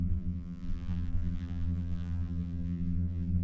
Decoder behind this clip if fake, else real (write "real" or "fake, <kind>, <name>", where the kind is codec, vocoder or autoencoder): fake, vocoder, BigVGAN v2